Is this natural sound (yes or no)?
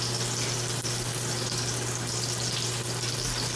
yes